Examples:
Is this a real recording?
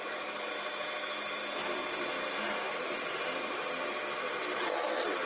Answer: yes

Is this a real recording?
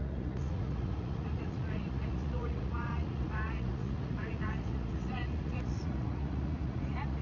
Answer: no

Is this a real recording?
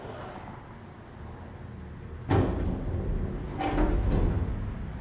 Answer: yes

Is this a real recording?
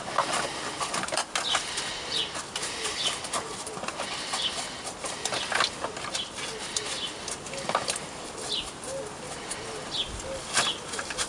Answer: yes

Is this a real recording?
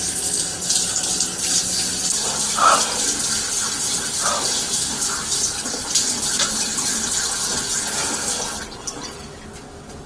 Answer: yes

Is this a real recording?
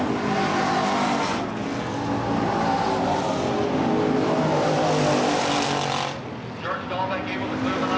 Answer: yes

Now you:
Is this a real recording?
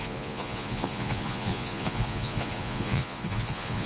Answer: no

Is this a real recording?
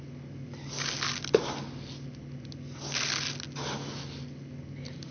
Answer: yes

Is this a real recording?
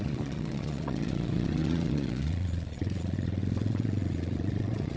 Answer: no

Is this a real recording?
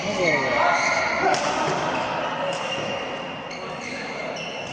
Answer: yes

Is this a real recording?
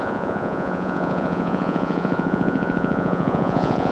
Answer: no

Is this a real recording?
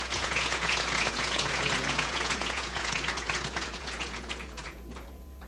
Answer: no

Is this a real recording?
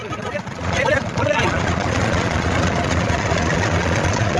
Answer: no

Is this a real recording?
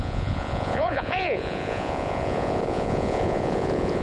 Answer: no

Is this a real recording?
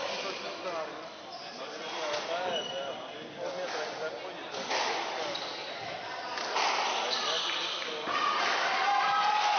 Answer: yes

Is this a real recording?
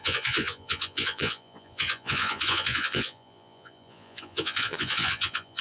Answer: no